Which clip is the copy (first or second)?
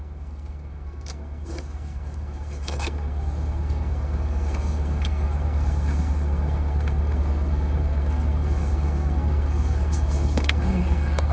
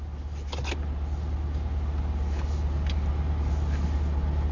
first